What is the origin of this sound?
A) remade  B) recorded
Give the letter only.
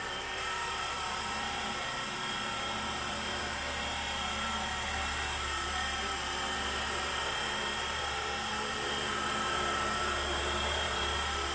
A